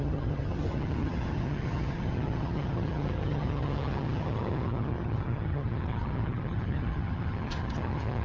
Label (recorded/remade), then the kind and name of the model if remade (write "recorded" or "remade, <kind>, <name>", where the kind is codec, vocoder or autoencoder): remade, vocoder, HiFi-GAN